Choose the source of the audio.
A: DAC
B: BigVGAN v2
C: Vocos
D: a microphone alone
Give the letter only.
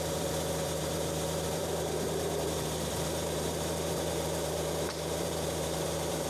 B